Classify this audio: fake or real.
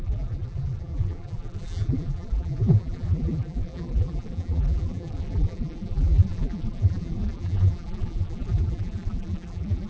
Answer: fake